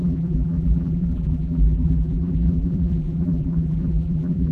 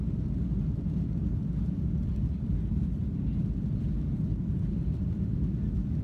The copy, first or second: first